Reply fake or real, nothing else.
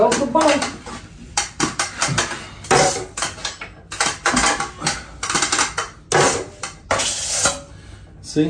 real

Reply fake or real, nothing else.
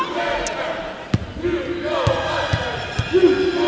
real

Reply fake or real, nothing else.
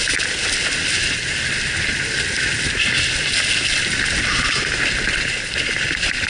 real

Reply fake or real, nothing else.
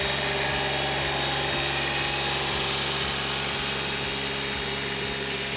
real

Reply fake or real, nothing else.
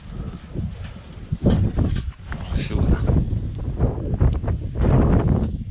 real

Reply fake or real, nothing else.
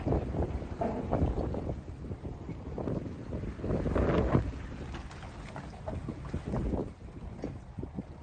real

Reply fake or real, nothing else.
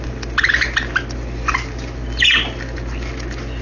real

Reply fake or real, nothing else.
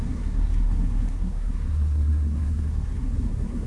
fake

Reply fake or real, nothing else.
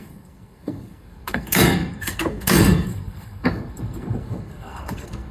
fake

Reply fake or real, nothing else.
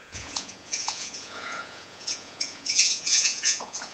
fake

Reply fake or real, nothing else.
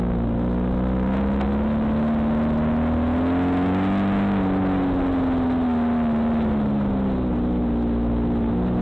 real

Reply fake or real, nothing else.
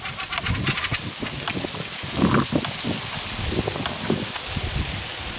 real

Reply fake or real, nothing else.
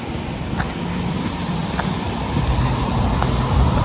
real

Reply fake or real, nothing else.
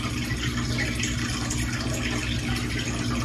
real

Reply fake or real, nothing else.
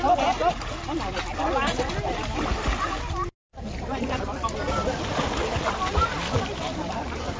real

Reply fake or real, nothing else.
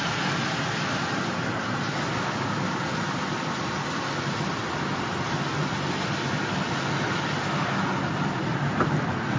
real